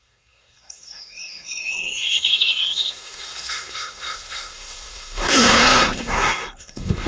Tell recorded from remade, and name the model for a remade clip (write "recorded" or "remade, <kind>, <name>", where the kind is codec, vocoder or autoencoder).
remade, codec, SNAC